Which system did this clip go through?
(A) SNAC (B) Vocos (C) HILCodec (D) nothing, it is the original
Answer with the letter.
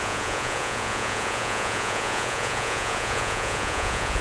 B